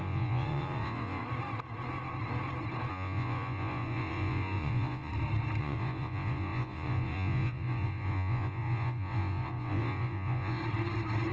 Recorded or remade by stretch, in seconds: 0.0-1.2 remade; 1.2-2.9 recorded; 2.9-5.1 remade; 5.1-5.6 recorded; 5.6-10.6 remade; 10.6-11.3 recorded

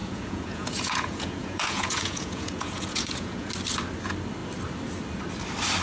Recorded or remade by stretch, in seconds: 0.0-3.5 remade; 3.5-5.8 recorded

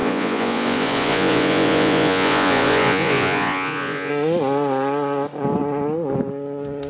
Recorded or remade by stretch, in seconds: 0.0-4.1 remade; 4.1-6.9 recorded

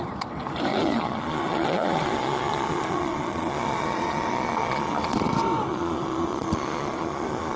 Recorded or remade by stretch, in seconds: 0.0-0.7 recorded; 0.7-5.3 remade; 5.3-5.7 recorded; 5.7-7.6 remade

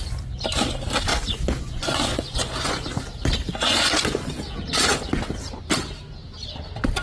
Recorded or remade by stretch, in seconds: 0.0-1.1 recorded; 1.1-3.0 remade; 3.0-3.5 recorded; 3.5-4.2 remade; 4.2-7.0 recorded

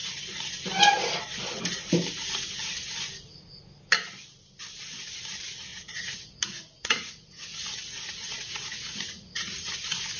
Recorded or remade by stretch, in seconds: 0.0-5.7 recorded; 5.7-9.7 remade; 9.7-10.2 recorded

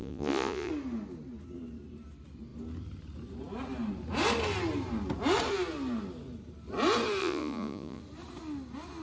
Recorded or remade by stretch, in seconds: 0.0-0.7 remade; 0.7-7.2 recorded; 7.2-8.0 remade; 8.0-9.0 recorded